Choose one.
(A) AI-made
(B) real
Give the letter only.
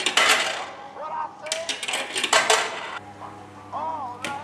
B